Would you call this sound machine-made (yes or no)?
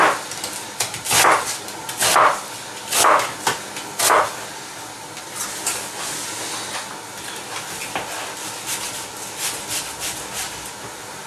no